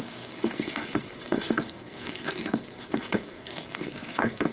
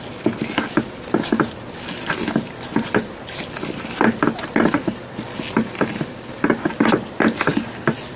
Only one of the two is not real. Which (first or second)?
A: first